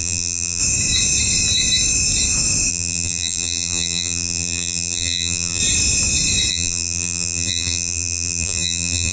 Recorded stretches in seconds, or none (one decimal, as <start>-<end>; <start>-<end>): 0.6-2.7; 5.6-6.5